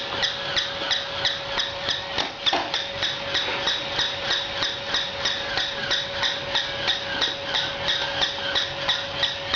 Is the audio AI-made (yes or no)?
no